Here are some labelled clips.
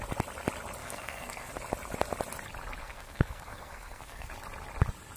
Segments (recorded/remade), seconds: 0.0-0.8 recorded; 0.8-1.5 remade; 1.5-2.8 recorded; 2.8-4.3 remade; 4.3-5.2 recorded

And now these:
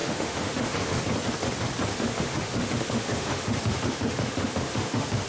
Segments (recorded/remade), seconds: 0.0-1.0 remade; 1.0-1.9 recorded; 1.9-5.3 remade

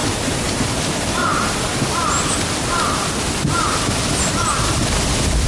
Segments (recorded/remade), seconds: 0.0-5.5 recorded

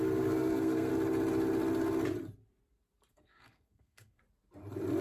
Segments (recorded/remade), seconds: 0.0-0.9 remade; 0.9-3.1 recorded; 3.1-4.2 remade; 4.2-5.0 recorded